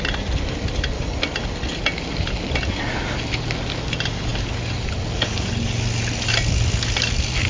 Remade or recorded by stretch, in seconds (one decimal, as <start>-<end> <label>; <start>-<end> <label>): 0.0-7.5 recorded